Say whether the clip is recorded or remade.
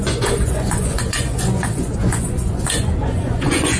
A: remade